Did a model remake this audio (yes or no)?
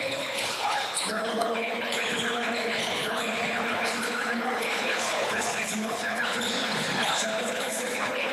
yes